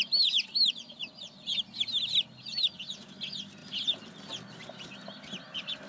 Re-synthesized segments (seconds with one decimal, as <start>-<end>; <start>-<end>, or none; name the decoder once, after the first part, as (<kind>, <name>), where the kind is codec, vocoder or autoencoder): none